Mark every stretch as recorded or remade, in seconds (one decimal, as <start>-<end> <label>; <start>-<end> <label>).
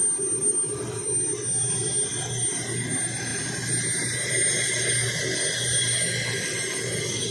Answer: 0.0-7.3 recorded